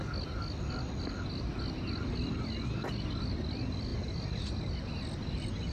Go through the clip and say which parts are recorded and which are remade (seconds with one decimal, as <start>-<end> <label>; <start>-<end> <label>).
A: 0.0-5.7 recorded